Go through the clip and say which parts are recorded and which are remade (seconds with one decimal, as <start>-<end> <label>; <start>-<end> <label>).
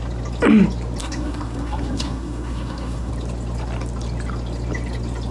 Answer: 0.0-1.0 recorded; 1.0-3.1 remade; 3.1-5.3 recorded